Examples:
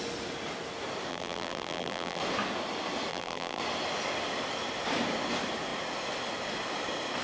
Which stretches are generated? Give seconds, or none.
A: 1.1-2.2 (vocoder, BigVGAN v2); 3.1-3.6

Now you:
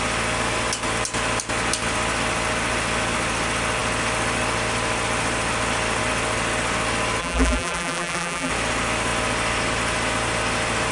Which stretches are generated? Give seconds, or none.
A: 7.2-8.5 (vocoder, BigVGAN v2)

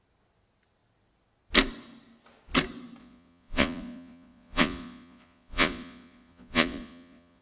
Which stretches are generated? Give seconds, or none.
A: 3.0-7.4 (vocoder, Vocos)

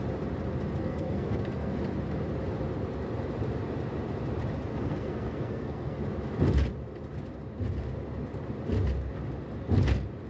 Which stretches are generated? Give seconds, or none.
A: 0.8-1.8 (codec, SNAC); 4.7-6.0